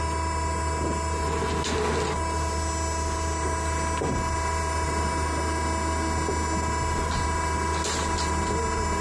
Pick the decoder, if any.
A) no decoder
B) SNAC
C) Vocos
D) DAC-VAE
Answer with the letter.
A